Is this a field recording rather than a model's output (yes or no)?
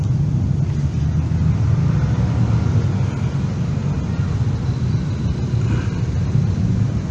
yes